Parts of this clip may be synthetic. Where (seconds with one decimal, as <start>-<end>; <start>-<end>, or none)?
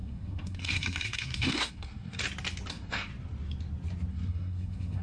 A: 0.0-2.2; 2.7-3.1; 4.1-5.0